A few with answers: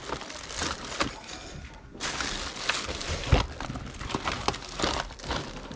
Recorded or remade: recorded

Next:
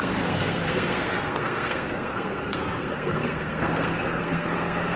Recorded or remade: remade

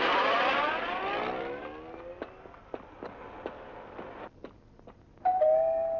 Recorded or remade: recorded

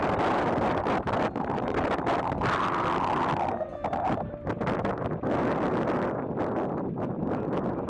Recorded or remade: recorded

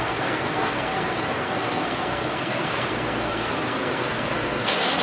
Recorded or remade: remade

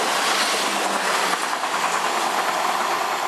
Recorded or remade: recorded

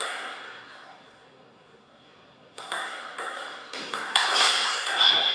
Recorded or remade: remade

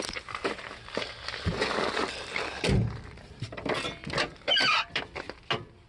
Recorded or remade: recorded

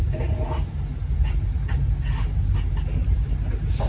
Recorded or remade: recorded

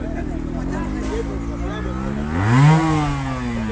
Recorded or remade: recorded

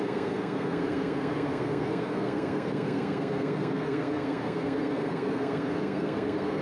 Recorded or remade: remade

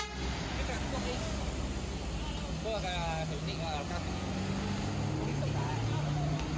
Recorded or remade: recorded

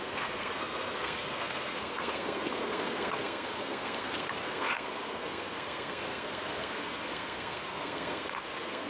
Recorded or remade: remade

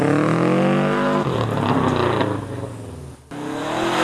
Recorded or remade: recorded